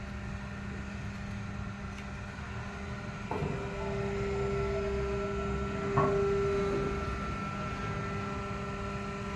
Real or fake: real